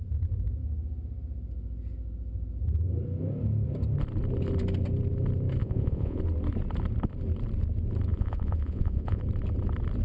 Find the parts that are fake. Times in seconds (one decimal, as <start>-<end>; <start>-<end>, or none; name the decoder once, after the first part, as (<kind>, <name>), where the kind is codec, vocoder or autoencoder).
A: 5.6-6.2 (vocoder, Vocos); 8.1-9.2